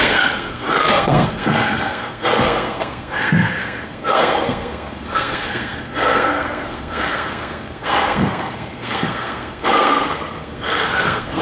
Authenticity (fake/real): fake